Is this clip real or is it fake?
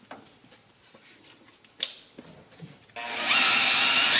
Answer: real